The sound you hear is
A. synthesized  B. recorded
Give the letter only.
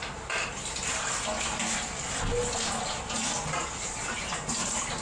B